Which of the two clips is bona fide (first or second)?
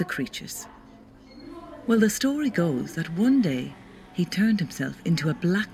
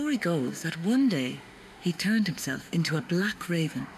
first